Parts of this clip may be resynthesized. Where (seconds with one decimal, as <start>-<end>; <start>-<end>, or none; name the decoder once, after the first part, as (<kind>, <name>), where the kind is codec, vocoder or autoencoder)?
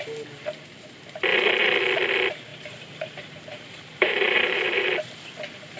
2.5-5.2 (vocoder, BigVGAN v2)